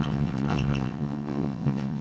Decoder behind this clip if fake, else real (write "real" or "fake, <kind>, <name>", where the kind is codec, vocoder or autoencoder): fake, vocoder, WaveNeXt